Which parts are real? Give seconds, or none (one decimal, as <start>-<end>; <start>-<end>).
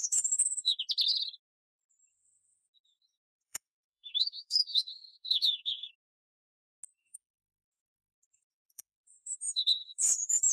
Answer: 0.8-2.1; 5.9-7.0